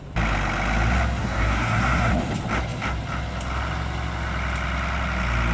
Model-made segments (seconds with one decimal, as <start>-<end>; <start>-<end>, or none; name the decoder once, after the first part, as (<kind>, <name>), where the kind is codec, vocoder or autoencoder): 1.2-2.1 (codec, SNAC)

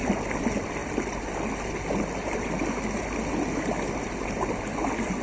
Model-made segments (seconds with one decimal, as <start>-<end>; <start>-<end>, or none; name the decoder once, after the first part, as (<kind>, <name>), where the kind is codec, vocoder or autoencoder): none

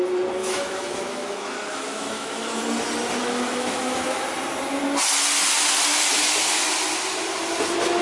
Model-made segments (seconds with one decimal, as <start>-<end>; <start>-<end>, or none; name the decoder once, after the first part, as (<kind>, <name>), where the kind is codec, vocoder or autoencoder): 0.4-2.6 (autoencoder, DAC-VAE); 3.2-4.2

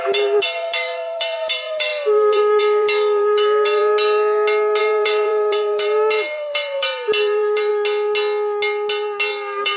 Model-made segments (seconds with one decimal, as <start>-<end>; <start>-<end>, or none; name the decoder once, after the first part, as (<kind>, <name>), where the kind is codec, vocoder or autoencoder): 0.0-3.8 (vocoder, BigVGAN v2); 4.8-7.7; 9.3-9.8

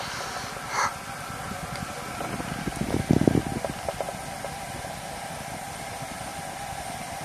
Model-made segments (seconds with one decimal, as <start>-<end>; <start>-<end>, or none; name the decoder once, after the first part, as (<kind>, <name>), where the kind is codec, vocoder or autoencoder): none

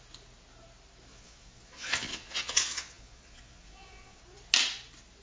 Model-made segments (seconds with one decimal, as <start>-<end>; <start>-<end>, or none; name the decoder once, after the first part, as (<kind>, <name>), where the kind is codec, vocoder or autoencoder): 1.1-4.2 (vocoder, Vocos)

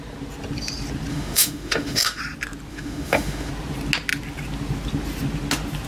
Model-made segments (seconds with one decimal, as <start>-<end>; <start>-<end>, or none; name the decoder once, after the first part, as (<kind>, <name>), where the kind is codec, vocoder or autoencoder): 1.1-2.2 (autoencoder, DAC-VAE); 2.7-3.5